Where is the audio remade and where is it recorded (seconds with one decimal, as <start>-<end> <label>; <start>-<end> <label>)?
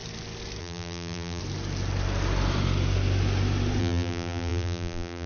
0.0-0.6 recorded; 0.6-1.4 remade; 1.4-3.8 recorded; 3.8-5.3 remade